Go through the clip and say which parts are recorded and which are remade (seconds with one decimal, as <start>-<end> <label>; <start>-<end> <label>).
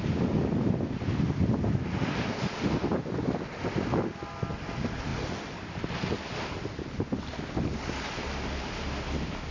0.0-9.5 recorded